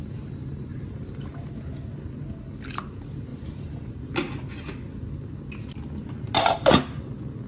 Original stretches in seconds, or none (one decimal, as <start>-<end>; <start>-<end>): 0.0-0.7; 1.6-3.3; 3.9-7.5